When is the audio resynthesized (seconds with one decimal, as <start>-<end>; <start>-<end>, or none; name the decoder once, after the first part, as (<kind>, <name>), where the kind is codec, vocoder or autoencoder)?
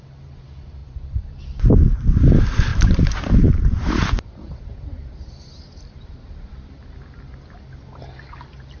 0.8-1.4 (vocoder, BigVGAN v2); 2.7-6.5